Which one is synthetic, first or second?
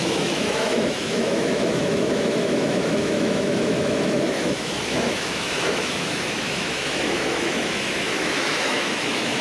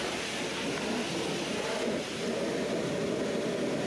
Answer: first